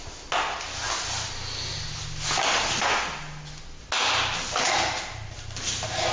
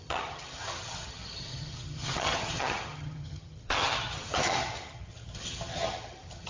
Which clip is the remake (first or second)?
second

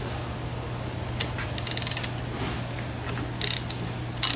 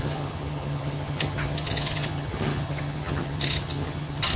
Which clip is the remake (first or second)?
second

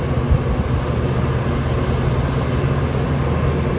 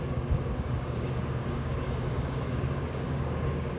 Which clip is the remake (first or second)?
second